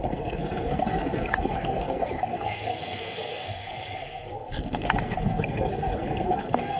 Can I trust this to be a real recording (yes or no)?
no